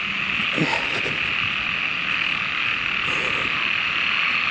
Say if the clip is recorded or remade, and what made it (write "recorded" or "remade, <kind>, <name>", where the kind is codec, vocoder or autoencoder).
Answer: recorded